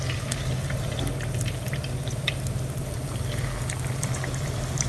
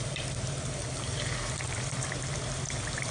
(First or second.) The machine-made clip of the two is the second